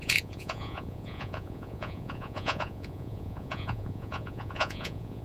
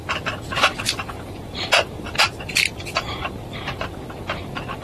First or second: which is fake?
first